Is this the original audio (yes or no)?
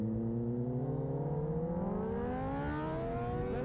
yes